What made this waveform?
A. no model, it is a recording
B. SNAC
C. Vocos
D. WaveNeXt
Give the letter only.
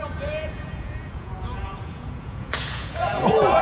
C